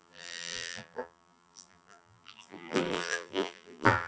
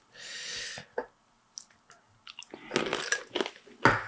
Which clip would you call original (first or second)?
second